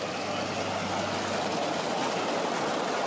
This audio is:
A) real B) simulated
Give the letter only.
A